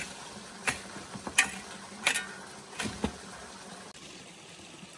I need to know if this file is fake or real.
real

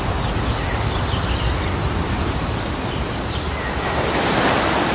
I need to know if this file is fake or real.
real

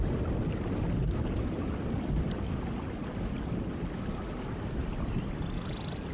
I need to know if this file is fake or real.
real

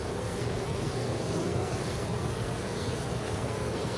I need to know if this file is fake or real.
fake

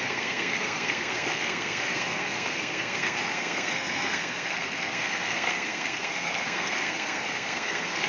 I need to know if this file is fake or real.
fake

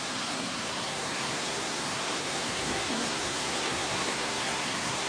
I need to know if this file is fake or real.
fake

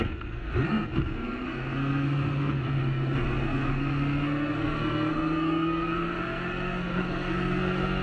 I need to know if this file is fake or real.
fake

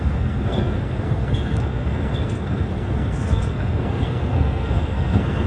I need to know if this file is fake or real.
fake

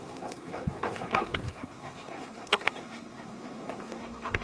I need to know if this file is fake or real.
fake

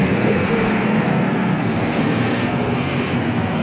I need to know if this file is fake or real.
fake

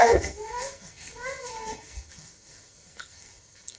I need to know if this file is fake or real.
fake